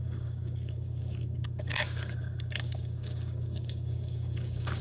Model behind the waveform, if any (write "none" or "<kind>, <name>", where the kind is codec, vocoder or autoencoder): codec, DAC